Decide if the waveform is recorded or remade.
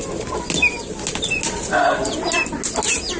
recorded